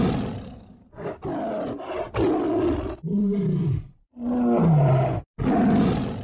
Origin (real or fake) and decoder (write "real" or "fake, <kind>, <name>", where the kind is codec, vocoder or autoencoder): real